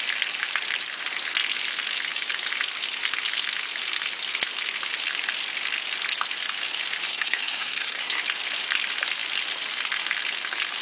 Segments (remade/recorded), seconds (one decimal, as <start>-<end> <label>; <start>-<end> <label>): 0.0-7.1 recorded; 7.1-8.2 remade; 8.2-10.8 recorded